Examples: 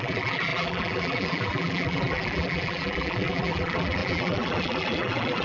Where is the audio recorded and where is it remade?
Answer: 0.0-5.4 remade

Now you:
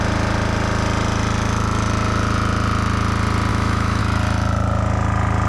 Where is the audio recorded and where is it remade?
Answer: 0.0-3.5 recorded; 3.5-4.0 remade; 4.0-5.5 recorded

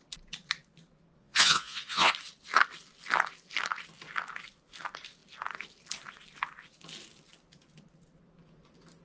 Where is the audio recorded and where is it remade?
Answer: 0.0-1.2 recorded; 1.2-2.1 remade; 2.1-9.0 recorded

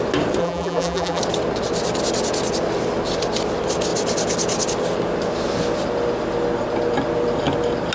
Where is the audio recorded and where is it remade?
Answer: 0.0-0.4 recorded; 0.4-1.2 remade; 1.2-7.9 recorded

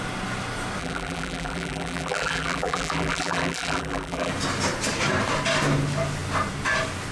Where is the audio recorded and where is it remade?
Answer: 0.0-0.8 recorded; 0.8-4.3 remade; 4.3-7.1 recorded

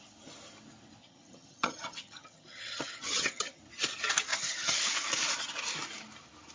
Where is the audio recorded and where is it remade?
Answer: 0.0-1.0 recorded; 1.0-3.6 remade; 3.6-4.3 recorded; 4.3-4.8 remade; 4.8-6.5 recorded

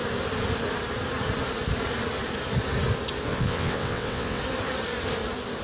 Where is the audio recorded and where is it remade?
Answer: 0.0-3.3 recorded; 3.3-4.4 remade; 4.4-5.6 recorded